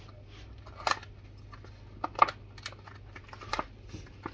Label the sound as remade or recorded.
recorded